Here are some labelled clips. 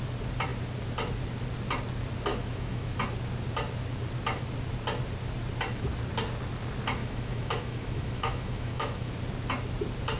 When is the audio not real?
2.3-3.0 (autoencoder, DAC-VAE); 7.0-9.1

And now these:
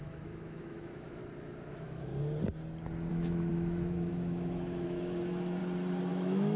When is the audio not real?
0.0-1.2 (autoencoder, DAC-VAE); 1.7-2.1; 3.1-5.6; 6.1-6.6

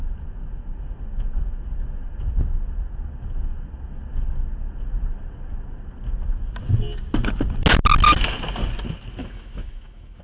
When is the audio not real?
9.2-10.2 (autoencoder, DAC-VAE)

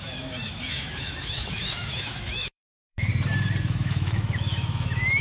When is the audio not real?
0.0-3.1 (autoencoder, DAC-VAE); 3.6-5.2

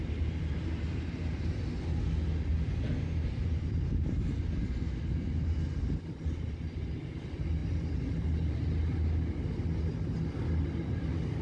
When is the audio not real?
none